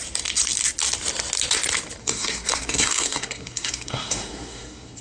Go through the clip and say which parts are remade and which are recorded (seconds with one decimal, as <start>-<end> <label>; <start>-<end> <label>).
0.0-2.0 recorded; 2.0-5.0 remade